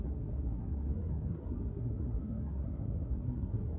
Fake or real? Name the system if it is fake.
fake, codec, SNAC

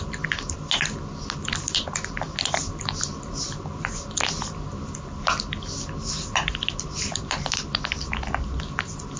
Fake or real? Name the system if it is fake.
real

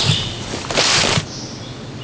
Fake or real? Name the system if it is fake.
real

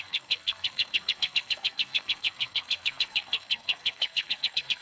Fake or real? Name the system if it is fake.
fake, codec, SNAC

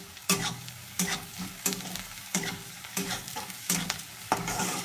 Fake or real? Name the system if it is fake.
fake, codec, DAC